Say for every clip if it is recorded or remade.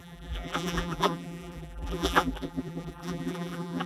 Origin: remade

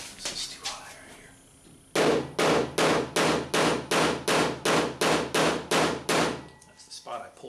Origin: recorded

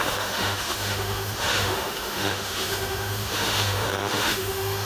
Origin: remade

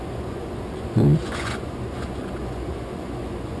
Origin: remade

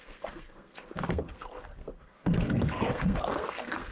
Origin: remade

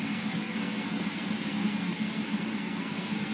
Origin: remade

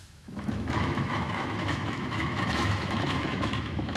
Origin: remade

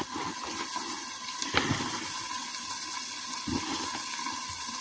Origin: recorded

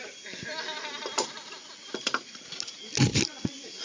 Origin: recorded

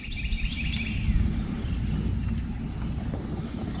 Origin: recorded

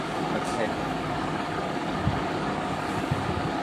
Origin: remade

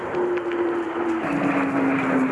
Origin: recorded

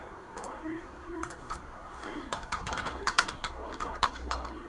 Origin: remade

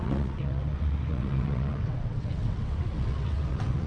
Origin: remade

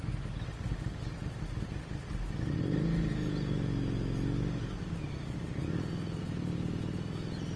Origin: recorded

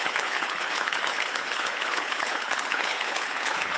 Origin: remade